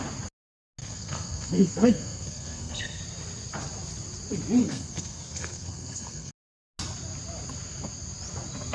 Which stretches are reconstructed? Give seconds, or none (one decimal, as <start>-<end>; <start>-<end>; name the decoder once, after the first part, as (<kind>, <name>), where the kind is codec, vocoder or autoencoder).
0.8-3.0 (codec, SNAC); 4.6-6.3